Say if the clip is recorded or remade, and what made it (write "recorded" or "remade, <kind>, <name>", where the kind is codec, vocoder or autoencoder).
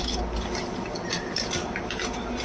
recorded